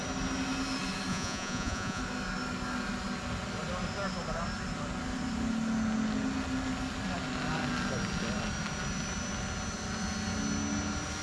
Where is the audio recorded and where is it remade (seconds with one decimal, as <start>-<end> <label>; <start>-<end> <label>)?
0.0-1.1 recorded; 1.1-2.0 remade; 2.0-11.2 recorded